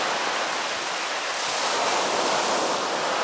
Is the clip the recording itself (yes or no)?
yes